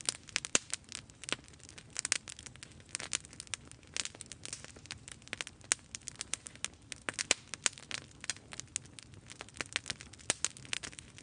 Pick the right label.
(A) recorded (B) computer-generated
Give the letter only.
A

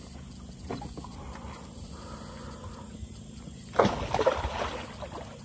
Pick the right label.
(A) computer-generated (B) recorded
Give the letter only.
B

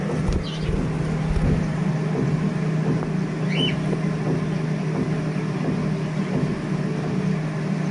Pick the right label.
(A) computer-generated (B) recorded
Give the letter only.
B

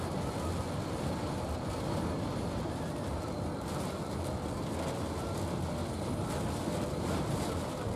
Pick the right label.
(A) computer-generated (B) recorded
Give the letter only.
B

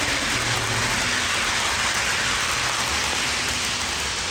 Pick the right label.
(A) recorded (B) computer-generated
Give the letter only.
A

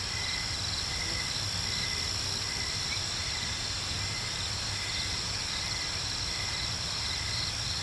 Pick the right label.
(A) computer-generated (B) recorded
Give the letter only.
B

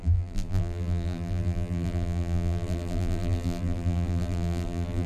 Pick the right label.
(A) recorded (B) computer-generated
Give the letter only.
B